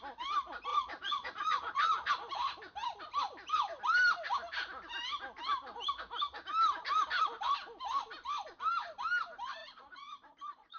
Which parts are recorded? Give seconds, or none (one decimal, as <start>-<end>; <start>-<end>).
0.0-0.7; 2.1-9.6